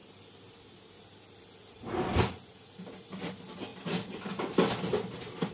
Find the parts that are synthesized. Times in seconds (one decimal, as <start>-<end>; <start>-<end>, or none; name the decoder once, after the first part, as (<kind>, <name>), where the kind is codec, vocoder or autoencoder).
none